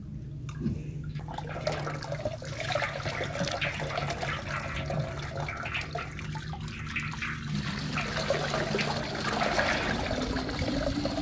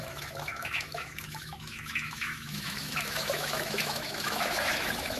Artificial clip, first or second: second